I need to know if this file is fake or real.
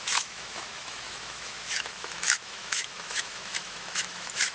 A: fake